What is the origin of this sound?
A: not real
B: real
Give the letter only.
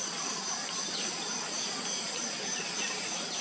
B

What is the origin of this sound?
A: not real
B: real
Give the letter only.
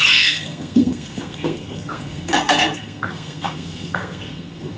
A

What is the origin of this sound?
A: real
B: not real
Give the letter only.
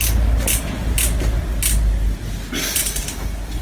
A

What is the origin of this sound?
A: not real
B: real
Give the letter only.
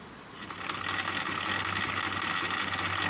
B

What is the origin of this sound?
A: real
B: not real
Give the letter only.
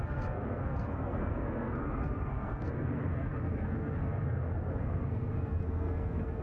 B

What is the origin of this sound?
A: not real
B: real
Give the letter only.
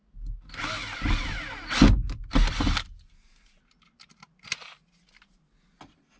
B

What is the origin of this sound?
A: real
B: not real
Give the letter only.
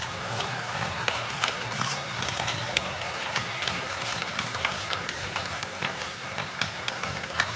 B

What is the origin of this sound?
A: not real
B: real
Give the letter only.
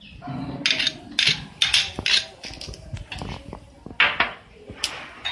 B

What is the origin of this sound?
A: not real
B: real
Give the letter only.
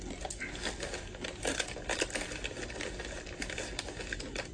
B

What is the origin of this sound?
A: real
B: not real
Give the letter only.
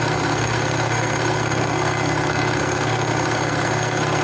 B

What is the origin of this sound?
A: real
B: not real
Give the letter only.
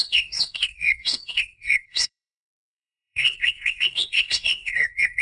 B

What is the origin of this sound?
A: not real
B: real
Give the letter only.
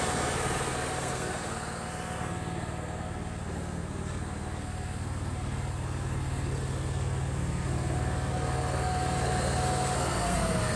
A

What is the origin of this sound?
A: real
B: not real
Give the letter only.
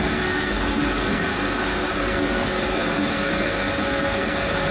B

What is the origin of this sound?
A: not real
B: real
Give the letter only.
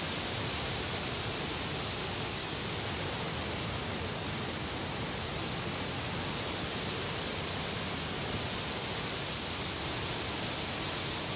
B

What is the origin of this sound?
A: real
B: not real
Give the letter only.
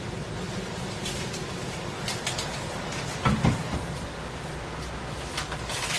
A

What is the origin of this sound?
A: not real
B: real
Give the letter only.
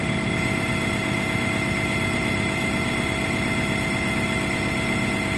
B